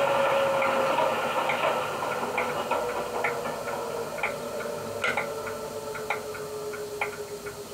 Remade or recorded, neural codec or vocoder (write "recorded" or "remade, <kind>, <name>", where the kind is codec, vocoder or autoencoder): recorded